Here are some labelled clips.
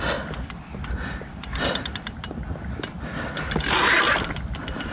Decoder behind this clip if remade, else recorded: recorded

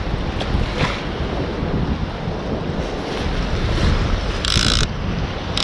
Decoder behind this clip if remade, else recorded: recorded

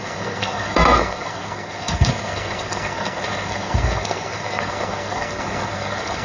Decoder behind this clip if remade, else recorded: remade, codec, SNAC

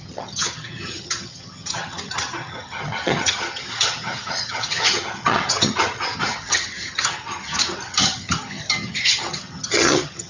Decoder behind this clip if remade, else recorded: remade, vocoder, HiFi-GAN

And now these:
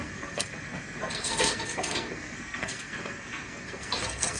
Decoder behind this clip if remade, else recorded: remade, codec, SNAC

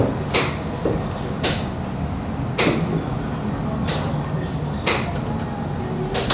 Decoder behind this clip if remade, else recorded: recorded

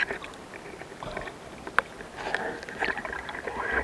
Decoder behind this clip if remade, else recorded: recorded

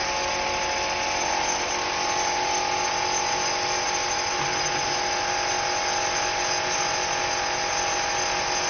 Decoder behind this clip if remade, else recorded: recorded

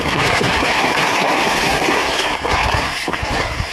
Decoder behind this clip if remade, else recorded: remade, codec, SNAC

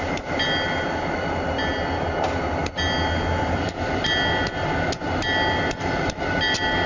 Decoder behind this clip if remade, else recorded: recorded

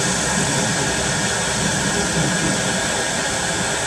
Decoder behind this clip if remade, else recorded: recorded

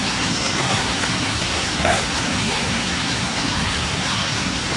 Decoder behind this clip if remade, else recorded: remade, codec, SNAC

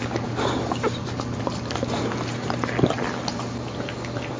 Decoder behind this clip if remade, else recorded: recorded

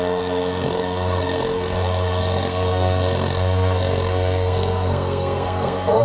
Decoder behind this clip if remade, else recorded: remade, codec, SNAC